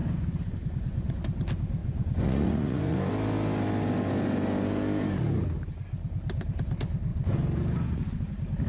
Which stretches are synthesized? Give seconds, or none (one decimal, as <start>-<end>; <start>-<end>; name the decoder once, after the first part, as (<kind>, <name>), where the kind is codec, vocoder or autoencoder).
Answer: 0.0-1.2 (vocoder, Vocos); 1.8-3.1; 7.1-8.0